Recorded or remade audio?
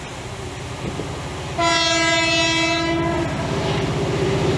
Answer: recorded